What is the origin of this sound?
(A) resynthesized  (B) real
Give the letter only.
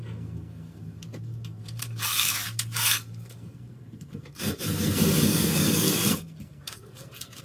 A